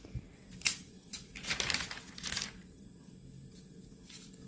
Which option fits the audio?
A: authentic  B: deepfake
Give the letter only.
A